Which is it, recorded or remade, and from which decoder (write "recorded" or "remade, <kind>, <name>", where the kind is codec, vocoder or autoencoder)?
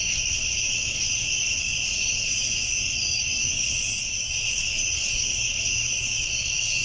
remade, codec, DAC